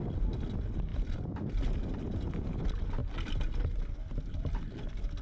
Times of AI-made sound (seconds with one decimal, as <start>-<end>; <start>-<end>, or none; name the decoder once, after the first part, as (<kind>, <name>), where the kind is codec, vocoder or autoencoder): 0.9-1.7 (vocoder, BigVGAN v2)